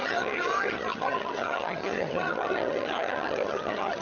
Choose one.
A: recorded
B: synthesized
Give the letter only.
B